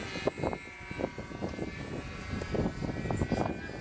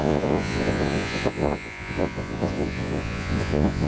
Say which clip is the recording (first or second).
first